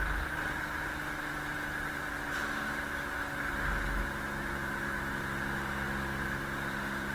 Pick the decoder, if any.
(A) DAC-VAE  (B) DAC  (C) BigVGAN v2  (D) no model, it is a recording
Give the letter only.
D